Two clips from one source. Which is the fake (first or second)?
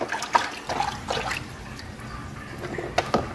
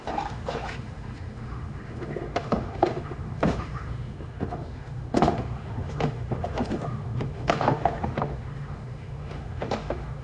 second